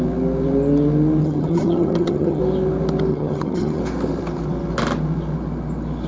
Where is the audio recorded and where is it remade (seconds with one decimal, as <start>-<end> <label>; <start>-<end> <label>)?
0.0-1.2 recorded; 1.2-2.4 remade; 2.4-3.1 recorded; 3.1-3.8 remade; 3.8-6.1 recorded